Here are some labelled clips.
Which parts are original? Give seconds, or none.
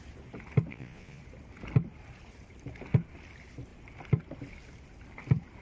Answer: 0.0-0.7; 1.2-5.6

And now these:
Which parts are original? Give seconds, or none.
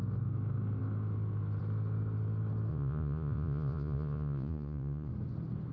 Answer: 0.0-2.7; 5.1-5.7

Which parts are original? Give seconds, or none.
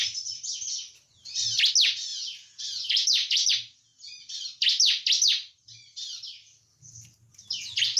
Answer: 0.0-2.1; 3.5-8.0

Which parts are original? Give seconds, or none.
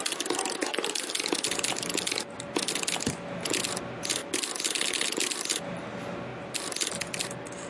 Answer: 0.0-7.7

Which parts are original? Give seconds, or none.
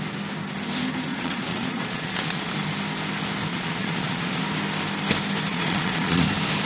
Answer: 0.0-1.1; 2.5-3.5; 4.4-5.5; 6.2-6.7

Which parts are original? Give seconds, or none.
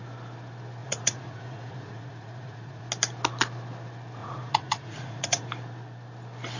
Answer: 0.0-0.8; 2.8-4.2; 5.5-6.6